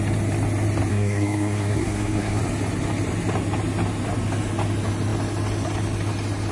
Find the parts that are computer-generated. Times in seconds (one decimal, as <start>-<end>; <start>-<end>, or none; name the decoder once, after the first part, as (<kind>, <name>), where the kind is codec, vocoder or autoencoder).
0.9-2.4 (codec, SNAC)

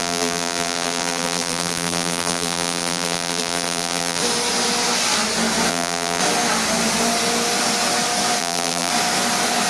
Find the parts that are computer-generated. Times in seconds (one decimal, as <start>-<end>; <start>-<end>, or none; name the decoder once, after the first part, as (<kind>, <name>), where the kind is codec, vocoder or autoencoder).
0.0-4.2 (vocoder, BigVGAN v2); 5.7-6.2; 8.4-8.9